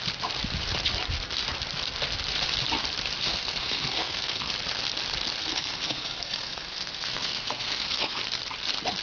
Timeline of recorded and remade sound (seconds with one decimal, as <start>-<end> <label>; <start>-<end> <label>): 0.0-3.3 recorded; 3.3-4.5 remade; 4.5-5.4 recorded; 5.4-8.2 remade; 8.2-9.0 recorded